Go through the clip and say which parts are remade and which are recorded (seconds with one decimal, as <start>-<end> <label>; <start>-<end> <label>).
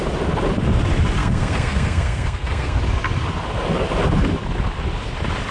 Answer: 0.0-1.2 recorded; 1.2-2.8 remade; 2.8-5.5 recorded